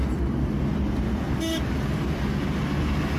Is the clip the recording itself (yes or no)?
yes